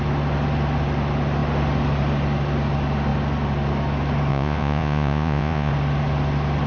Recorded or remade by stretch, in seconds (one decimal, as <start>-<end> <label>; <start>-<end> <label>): 0.0-4.3 recorded; 4.3-5.7 remade; 5.7-6.7 recorded